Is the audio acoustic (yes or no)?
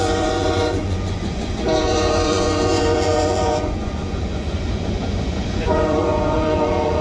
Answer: no